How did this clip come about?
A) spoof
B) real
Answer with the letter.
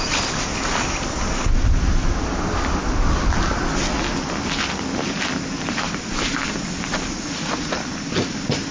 B